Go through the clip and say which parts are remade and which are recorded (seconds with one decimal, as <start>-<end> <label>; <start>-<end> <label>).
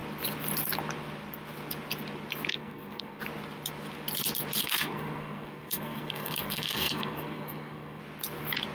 0.0-2.5 recorded; 2.5-3.2 remade; 3.2-4.6 recorded; 4.6-8.0 remade; 8.0-8.7 recorded